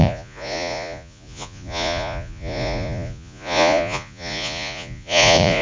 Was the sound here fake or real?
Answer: fake